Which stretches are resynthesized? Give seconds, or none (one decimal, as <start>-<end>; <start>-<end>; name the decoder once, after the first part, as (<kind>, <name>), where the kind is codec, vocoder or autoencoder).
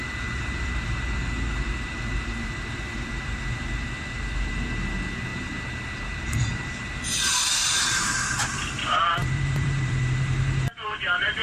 0.0-11.4 (vocoder, BigVGAN v2)